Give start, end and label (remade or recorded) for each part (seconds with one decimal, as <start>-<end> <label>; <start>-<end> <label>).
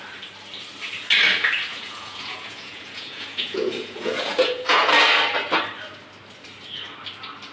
0.0-1.7 recorded; 1.7-4.9 remade; 4.9-7.5 recorded